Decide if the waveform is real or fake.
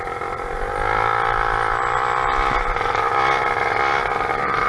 real